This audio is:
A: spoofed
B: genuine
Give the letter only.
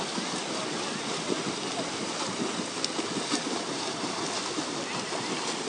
B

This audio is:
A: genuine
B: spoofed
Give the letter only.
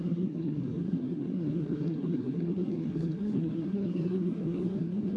B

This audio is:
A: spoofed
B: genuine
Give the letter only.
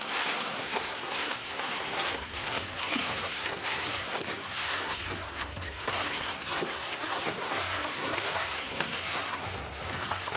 A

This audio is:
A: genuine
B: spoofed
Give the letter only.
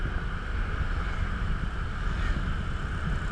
A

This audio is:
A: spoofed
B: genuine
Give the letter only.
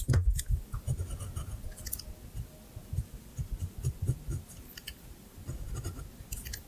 B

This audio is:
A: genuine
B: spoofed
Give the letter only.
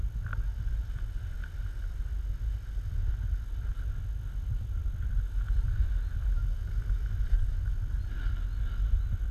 A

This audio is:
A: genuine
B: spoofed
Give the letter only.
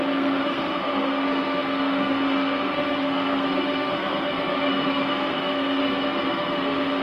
B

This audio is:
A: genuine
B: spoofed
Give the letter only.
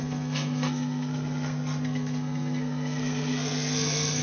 B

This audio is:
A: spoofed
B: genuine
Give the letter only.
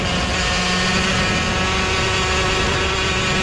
B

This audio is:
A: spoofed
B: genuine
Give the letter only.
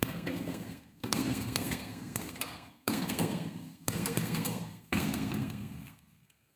A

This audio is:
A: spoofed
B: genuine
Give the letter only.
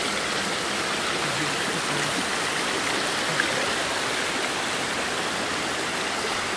B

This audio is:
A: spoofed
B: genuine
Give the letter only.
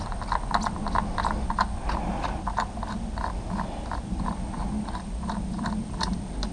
B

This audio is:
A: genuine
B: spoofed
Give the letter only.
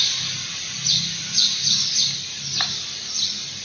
A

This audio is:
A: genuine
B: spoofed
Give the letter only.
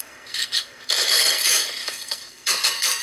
B